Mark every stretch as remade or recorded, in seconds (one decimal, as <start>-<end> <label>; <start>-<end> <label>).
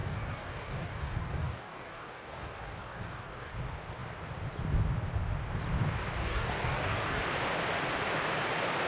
0.0-3.5 remade; 3.5-6.2 recorded; 6.2-7.2 remade; 7.2-8.9 recorded